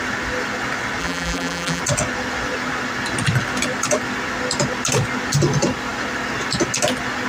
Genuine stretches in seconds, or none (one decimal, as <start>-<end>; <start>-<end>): 0.0-1.0; 1.8-7.3